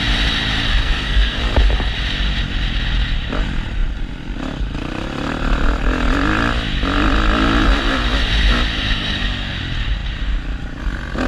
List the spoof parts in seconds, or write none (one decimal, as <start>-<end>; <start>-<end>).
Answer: 0.7-1.4; 8.7-9.6